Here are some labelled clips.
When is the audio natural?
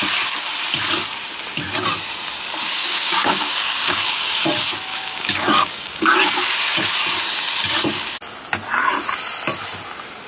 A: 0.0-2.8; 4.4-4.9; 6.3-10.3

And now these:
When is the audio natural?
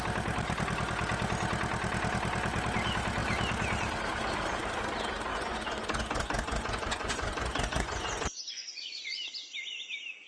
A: 0.0-5.3; 9.3-10.3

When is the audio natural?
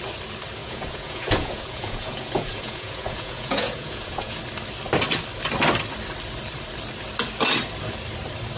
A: 0.0-0.6; 4.4-8.6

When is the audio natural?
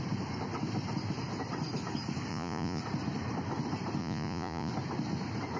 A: 0.0-2.3; 2.8-4.0; 4.7-5.6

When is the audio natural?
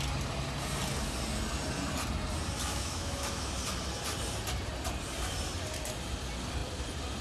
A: 0.0-2.7; 3.5-7.2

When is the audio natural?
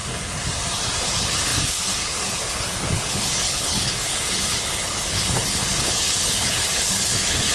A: 0.0-1.0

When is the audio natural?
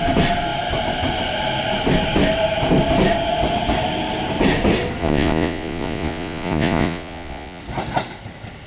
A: 0.0-5.0; 7.6-8.7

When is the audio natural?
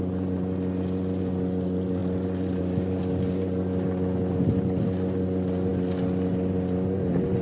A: 0.0-7.4